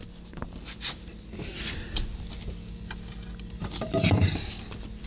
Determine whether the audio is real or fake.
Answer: real